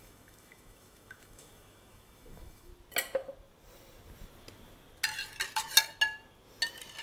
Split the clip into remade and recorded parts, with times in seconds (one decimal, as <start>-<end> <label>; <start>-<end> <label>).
0.0-2.7 remade; 2.7-7.0 recorded

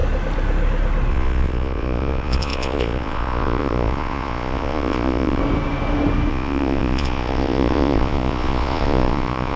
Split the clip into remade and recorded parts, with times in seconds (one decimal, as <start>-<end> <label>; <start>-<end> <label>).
0.0-1.1 recorded; 1.1-5.4 remade; 5.4-6.3 recorded; 6.3-9.6 remade

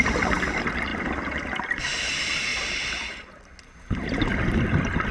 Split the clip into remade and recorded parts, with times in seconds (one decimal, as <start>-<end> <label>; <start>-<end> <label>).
0.0-5.1 recorded

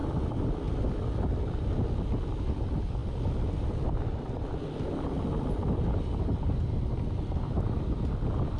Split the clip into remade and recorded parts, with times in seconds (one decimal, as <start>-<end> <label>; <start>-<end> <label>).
0.0-8.6 recorded

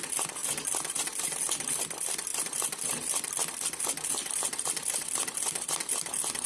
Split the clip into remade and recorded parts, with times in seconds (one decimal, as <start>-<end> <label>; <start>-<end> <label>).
0.0-2.3 recorded; 2.3-3.8 remade; 3.8-4.5 recorded; 4.5-5.9 remade; 5.9-6.5 recorded

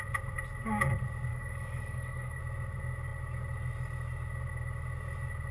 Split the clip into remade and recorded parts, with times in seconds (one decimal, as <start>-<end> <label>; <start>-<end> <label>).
0.0-1.3 recorded; 1.3-2.4 remade; 2.4-5.5 recorded

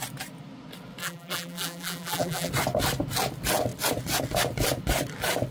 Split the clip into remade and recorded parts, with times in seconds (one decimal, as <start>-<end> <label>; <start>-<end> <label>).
0.0-1.0 recorded; 1.0-2.5 remade; 2.5-5.5 recorded

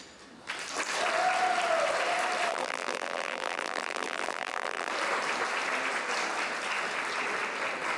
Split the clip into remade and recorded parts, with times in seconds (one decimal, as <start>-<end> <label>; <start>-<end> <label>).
0.0-2.5 recorded; 2.5-4.9 remade; 4.9-8.0 recorded